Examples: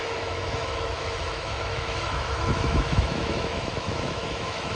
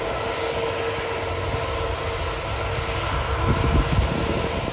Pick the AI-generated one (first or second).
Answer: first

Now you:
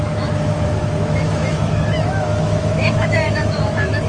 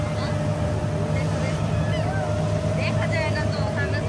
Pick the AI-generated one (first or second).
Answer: first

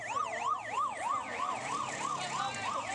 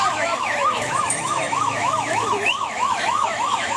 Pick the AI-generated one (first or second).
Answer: second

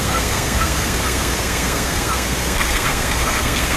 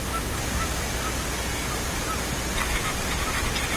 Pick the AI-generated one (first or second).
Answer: first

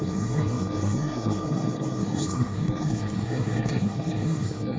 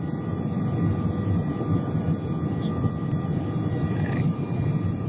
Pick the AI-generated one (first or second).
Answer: first